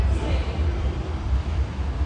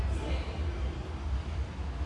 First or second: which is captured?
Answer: second